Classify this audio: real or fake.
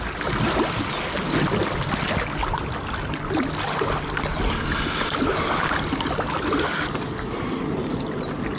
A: real